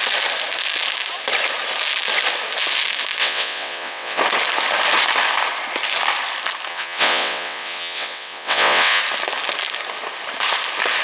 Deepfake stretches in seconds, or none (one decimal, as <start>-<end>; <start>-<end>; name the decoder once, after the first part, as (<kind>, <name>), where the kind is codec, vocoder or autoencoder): 3.2-4.2 (vocoder, WaveNeXt); 6.7-9.0